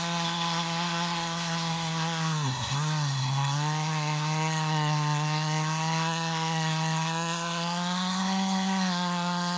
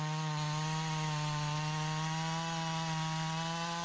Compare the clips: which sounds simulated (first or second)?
first